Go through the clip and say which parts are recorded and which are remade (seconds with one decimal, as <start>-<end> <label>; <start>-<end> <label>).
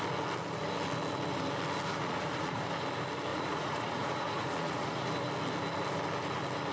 0.0-1.9 recorded; 1.9-2.6 remade; 2.6-3.3 recorded; 3.3-5.1 remade; 5.1-6.7 recorded